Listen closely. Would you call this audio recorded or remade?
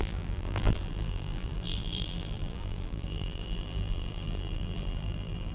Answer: remade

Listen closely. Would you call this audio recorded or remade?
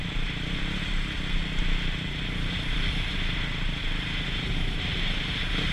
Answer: remade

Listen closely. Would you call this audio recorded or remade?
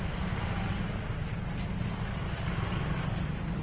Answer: recorded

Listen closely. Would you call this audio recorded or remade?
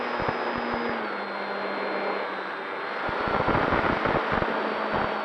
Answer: recorded